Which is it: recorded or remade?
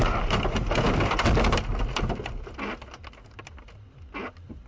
recorded